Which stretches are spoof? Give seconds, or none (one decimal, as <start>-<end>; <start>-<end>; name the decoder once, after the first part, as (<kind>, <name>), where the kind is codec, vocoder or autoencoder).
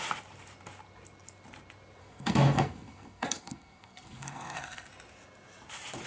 2.0-4.9 (codec, SNAC)